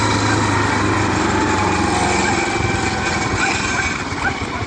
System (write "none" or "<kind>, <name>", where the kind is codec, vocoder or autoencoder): none